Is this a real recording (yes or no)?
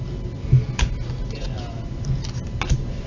yes